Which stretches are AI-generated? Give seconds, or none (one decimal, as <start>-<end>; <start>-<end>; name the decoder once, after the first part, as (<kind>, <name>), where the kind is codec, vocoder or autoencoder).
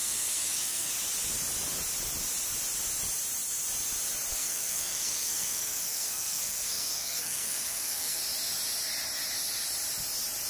0.0-0.9 (codec, SNAC); 4.3-8.2